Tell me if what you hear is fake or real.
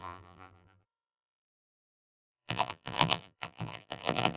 fake